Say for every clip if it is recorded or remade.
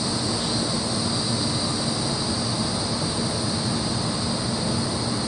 recorded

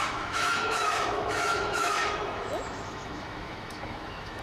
remade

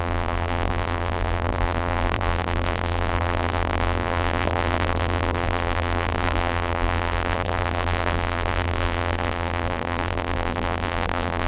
remade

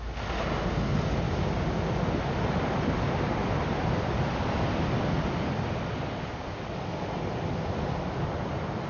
recorded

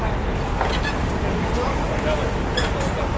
recorded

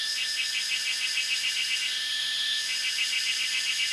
remade